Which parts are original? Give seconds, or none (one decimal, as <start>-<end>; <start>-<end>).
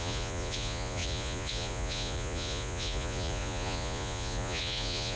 none